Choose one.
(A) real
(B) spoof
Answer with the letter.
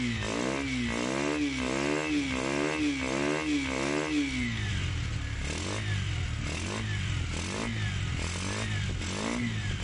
A